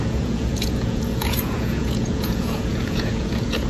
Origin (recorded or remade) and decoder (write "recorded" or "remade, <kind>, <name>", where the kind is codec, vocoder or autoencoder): remade, vocoder, Vocos